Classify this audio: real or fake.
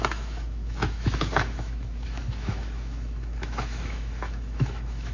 fake